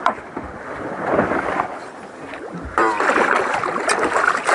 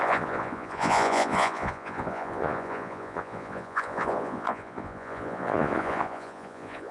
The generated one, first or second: second